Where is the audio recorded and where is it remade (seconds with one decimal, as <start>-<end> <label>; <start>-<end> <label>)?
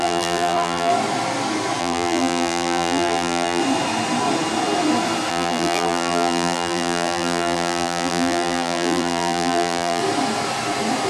0.0-0.9 remade; 0.9-1.8 recorded; 1.8-3.6 remade; 3.6-5.3 recorded; 5.3-10.0 remade; 10.0-11.1 recorded